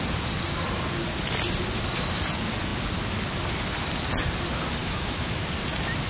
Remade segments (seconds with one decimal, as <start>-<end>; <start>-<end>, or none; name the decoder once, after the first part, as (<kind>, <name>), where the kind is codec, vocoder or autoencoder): 4.8-5.4 (autoencoder, DAC-VAE)